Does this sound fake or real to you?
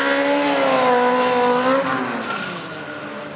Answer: real